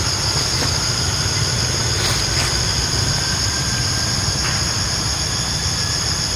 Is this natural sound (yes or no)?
yes